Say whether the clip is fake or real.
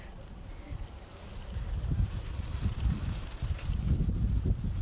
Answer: real